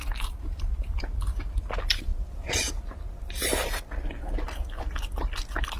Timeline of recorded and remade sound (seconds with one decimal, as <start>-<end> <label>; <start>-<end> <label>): 0.0-2.1 recorded; 2.1-2.6 remade; 2.6-5.8 recorded